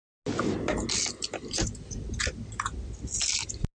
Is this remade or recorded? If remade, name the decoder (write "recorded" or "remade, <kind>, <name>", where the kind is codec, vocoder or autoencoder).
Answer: recorded